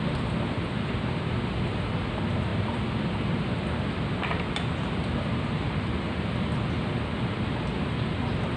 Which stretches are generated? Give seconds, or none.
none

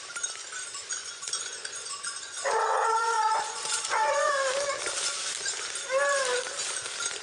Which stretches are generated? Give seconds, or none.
0.8-4.3 (vocoder, Vocos)

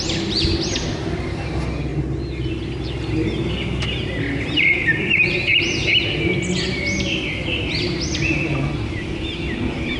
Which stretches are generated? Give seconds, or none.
none

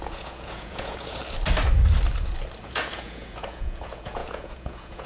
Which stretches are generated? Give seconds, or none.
0.0-1.2 (vocoder, Vocos); 2.6-5.1

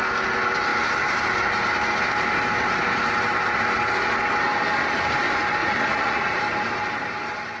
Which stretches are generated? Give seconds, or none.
5.6-6.4 (vocoder, Vocos)

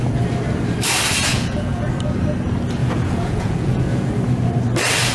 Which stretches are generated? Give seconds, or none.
1.3-1.9 (vocoder, Vocos); 2.8-4.1